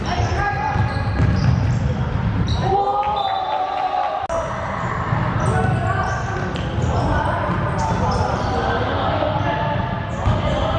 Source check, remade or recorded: recorded